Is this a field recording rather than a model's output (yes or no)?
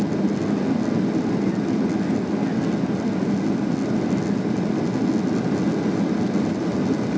yes